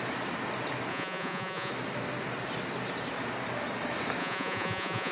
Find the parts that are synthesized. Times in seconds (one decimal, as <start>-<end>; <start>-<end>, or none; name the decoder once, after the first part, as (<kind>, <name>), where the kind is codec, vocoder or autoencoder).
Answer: 0.9-1.7 (vocoder, Vocos); 4.2-5.1